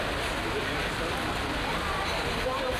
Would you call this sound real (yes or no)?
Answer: yes